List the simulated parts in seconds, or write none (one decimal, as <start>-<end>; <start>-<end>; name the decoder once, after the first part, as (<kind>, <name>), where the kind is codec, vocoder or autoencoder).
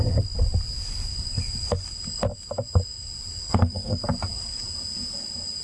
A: 3.4-4.0 (codec, HILCodec)